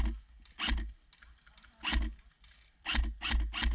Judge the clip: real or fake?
real